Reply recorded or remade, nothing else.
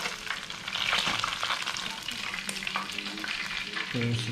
recorded